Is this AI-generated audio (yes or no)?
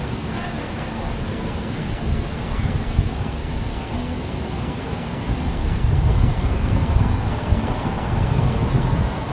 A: yes